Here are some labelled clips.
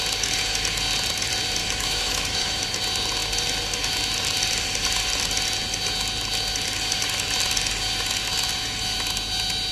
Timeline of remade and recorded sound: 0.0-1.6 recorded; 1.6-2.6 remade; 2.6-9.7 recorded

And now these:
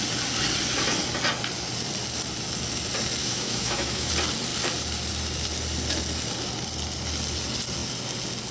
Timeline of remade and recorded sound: 0.0-3.2 recorded; 3.2-4.1 remade; 4.1-8.5 recorded

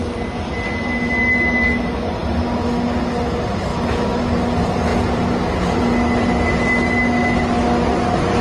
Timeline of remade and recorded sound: 0.0-3.7 recorded; 3.7-4.2 remade; 4.2-8.4 recorded